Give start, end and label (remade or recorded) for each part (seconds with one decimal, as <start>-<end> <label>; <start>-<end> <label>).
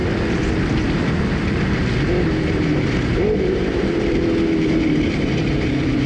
0.0-2.2 recorded; 2.2-4.2 remade; 4.2-4.7 recorded; 4.7-6.1 remade